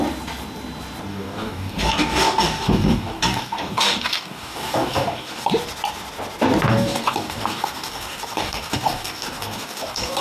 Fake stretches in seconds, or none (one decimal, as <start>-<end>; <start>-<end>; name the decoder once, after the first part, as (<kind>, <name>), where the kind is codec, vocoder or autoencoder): 1.1-5.5 (codec, DAC); 6.7-10.2